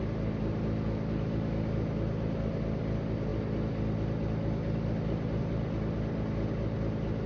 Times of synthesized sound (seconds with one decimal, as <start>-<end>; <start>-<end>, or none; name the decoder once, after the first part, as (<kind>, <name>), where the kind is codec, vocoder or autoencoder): none